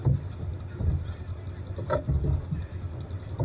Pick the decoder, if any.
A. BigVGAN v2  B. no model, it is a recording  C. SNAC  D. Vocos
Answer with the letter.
B